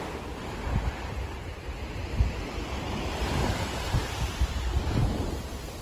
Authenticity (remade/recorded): recorded